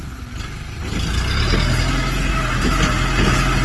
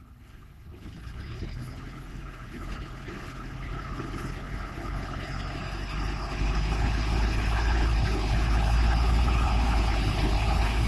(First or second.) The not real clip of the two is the second